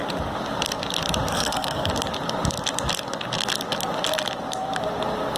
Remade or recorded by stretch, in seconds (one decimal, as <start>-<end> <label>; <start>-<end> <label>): 0.0-1.3 recorded; 1.3-1.9 remade; 1.9-5.4 recorded